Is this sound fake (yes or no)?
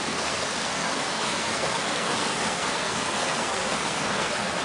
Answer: yes